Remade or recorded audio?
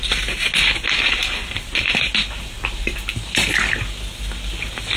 recorded